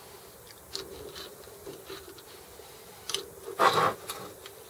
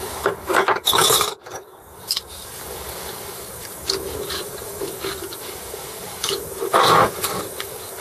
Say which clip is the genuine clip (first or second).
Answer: first